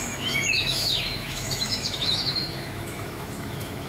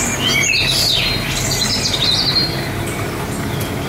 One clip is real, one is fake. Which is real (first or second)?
second